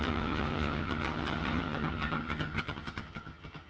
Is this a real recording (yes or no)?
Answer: no